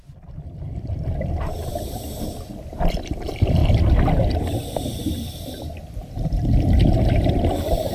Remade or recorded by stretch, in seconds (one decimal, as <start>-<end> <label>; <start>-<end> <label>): 0.0-3.6 remade; 3.6-4.3 recorded; 4.3-7.9 remade